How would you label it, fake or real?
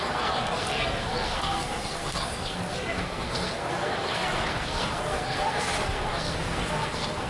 fake